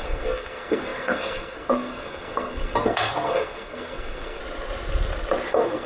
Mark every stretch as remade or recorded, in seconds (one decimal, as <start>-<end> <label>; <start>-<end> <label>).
0.0-4.4 remade; 4.4-5.5 recorded; 5.5-5.9 remade